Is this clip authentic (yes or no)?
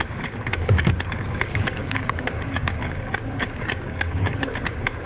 no